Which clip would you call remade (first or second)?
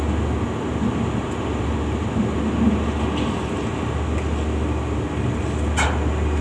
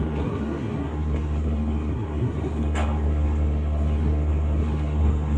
second